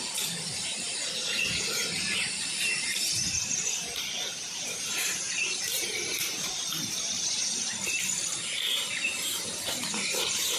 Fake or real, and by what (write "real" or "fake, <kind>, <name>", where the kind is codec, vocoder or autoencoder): fake, vocoder, BigVGAN v2